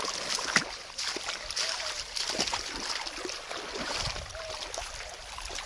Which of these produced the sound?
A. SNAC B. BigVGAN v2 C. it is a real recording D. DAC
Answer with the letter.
C